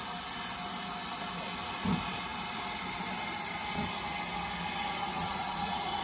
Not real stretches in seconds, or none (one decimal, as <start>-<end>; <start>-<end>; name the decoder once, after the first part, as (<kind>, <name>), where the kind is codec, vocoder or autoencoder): 5.1-6.0 (vocoder, Vocos)